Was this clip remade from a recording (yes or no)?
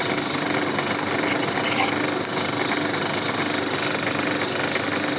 no